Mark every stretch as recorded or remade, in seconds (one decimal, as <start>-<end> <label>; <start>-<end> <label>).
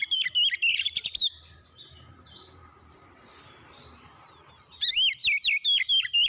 0.0-0.7 recorded; 0.7-4.5 remade; 4.5-6.3 recorded